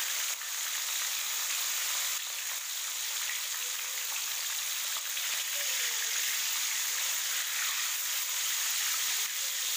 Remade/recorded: recorded